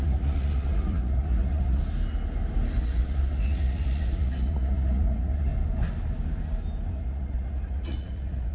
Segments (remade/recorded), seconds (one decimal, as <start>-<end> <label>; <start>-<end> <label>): 0.0-1.8 remade; 1.8-2.8 recorded; 2.8-5.5 remade; 5.5-6.9 recorded; 6.9-8.5 remade